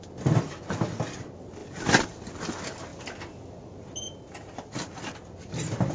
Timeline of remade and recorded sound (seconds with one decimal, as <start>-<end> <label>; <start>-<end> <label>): 0.0-5.9 recorded